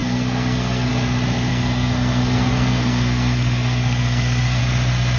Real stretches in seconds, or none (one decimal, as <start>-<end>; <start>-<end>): 0.9-1.5; 4.6-5.2